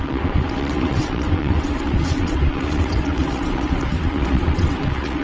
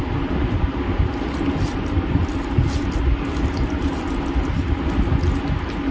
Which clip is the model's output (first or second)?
first